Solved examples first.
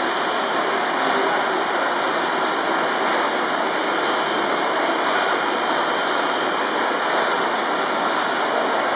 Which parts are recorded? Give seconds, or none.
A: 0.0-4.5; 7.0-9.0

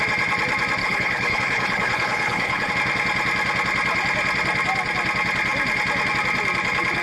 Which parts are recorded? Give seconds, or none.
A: 0.0-0.8; 2.7-7.0

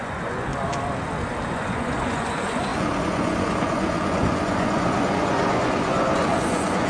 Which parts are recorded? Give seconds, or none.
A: 0.5-1.5

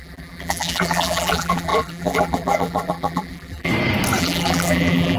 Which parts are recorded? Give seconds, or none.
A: 3.7-4.2